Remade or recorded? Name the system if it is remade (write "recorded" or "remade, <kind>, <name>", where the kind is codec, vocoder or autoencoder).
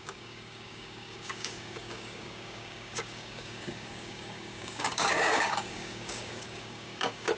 remade, codec, DAC